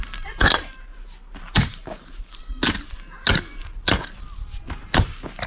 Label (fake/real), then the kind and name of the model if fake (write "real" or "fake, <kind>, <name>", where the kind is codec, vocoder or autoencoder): real